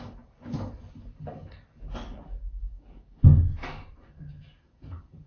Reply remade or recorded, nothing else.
remade